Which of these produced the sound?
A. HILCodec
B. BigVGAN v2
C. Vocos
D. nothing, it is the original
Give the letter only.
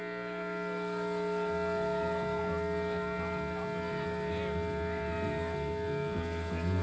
D